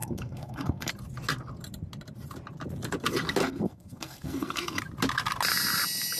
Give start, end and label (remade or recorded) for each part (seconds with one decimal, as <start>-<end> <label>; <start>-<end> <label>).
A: 0.0-0.9 remade; 0.9-3.4 recorded; 3.4-4.8 remade; 4.8-6.2 recorded